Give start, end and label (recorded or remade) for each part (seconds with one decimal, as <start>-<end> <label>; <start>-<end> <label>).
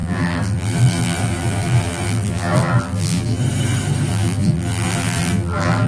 0.0-3.4 remade; 3.4-4.1 recorded; 4.1-5.9 remade